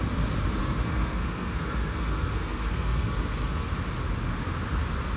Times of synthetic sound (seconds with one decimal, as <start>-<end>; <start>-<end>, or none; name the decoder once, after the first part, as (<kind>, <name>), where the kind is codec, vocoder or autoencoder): 0.6-3.7 (codec, SNAC)